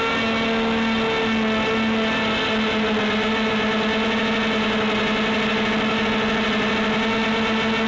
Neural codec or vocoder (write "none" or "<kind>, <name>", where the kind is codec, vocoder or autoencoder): none